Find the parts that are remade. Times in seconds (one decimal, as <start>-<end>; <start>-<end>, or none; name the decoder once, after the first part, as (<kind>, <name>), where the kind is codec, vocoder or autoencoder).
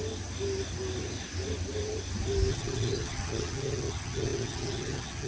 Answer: 2.5-5.3 (vocoder, HiFi-GAN)